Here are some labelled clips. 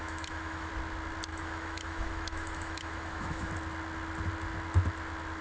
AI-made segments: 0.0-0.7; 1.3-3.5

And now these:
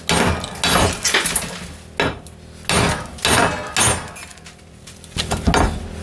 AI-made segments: none